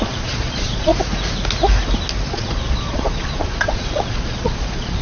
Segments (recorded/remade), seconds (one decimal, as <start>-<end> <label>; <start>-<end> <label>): 0.0-0.9 remade; 0.9-2.3 recorded; 2.3-5.0 remade